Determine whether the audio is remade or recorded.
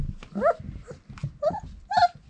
recorded